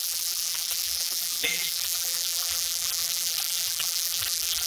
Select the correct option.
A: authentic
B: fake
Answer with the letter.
B